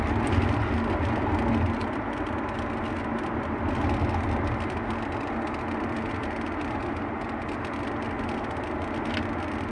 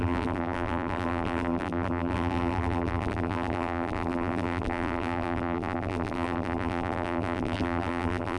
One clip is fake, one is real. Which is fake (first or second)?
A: second